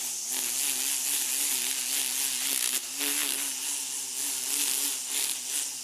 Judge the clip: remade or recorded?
recorded